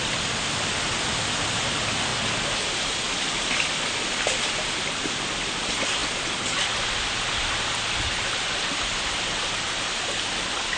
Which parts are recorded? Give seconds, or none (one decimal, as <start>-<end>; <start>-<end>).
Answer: 0.0-10.8